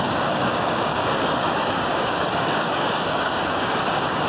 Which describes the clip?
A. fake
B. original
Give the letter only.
A